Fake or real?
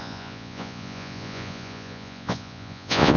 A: fake